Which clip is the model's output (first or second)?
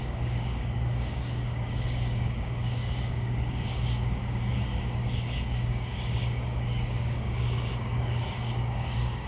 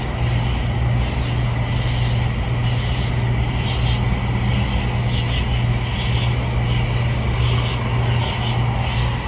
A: first